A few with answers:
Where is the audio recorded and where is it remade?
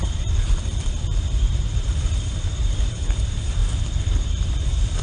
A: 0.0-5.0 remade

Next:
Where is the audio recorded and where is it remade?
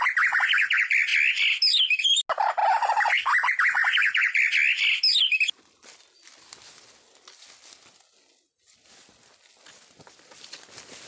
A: 0.0-11.1 recorded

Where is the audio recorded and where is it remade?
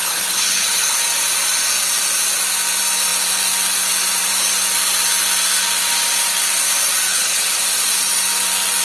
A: 0.0-1.0 remade; 1.0-7.1 recorded; 7.1-7.6 remade; 7.6-8.8 recorded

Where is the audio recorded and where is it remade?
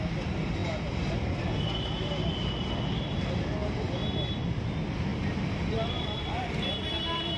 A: 0.0-7.4 recorded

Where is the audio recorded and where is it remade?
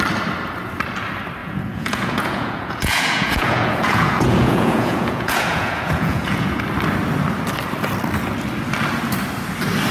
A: 0.0-1.4 recorded; 1.4-6.6 remade; 6.6-9.9 recorded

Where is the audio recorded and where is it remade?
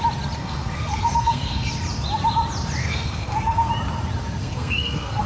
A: 0.0-0.4 recorded; 0.4-1.7 remade; 1.7-2.8 recorded; 2.8-3.7 remade; 3.7-4.4 recorded; 4.4-5.3 remade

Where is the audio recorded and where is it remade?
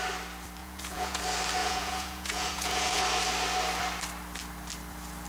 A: 0.0-0.6 recorded; 0.6-1.2 remade; 1.2-1.6 recorded; 1.6-3.0 remade; 3.0-5.3 recorded